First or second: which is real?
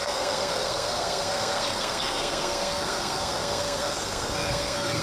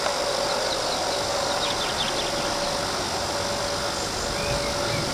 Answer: second